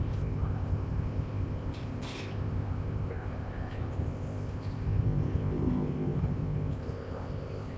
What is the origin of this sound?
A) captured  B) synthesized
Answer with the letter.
B